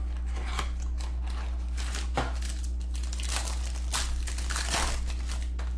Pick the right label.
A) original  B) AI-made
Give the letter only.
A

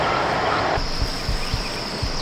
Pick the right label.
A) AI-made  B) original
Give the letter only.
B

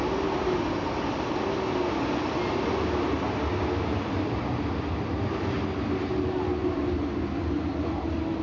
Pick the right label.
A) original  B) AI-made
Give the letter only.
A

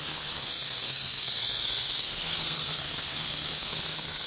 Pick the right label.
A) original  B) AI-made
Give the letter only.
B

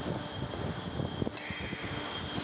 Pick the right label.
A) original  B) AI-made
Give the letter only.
A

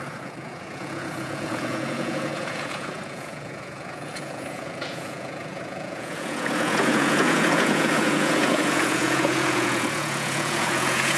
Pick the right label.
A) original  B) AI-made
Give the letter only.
B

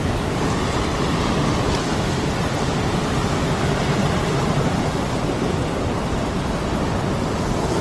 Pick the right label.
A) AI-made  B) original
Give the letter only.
B